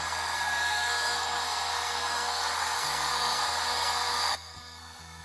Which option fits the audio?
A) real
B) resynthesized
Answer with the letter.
B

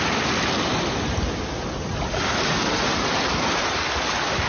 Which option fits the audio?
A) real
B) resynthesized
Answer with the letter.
A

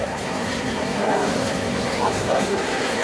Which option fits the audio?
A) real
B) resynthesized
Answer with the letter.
B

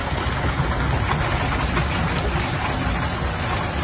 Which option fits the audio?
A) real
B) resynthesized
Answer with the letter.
A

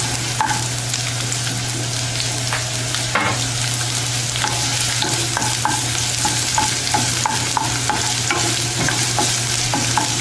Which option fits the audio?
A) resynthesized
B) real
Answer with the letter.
B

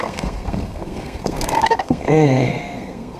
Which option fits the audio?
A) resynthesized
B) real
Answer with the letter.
A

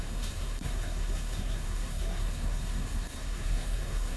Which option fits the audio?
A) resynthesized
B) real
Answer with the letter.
A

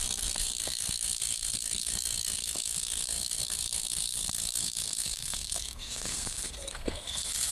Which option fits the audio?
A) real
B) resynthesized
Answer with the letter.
B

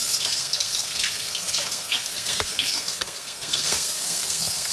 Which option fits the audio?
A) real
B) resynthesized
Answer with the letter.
B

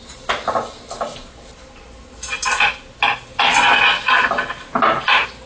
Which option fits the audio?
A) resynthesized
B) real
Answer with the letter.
B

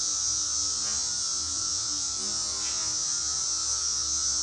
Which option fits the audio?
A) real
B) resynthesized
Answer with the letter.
A